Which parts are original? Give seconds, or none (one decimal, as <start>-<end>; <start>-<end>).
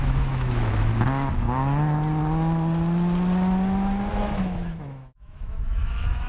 0.9-4.1